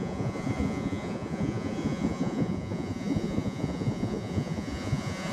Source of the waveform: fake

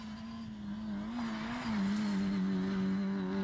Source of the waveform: real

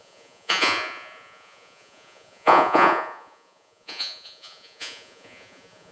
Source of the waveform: fake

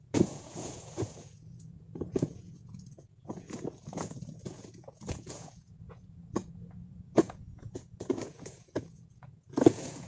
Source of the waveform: fake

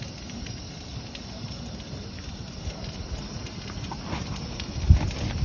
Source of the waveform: real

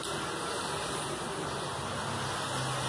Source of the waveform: real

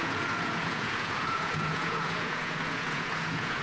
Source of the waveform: fake